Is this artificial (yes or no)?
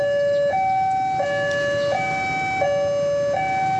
no